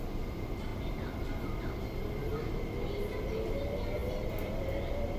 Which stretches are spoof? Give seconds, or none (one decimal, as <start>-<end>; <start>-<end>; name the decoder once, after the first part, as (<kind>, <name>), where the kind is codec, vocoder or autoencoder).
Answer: 0.7-1.7 (vocoder, BigVGAN v2); 2.3-3.3; 4.0-4.6

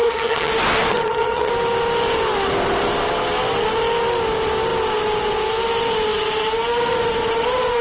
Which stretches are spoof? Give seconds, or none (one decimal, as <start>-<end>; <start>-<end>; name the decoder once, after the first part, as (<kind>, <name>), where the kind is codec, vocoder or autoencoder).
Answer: 0.0-0.5 (vocoder, HiFi-GAN); 0.9-1.5